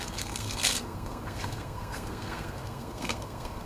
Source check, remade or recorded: remade